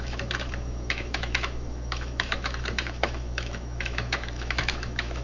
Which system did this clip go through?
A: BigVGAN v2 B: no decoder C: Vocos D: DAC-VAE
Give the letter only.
D